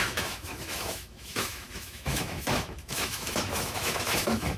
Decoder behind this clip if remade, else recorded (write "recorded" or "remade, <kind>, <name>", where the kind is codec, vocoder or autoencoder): remade, autoencoder, DAC-VAE